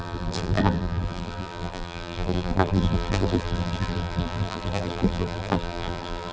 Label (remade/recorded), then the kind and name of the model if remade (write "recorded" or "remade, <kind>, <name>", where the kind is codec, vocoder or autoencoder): remade, vocoder, BigVGAN v2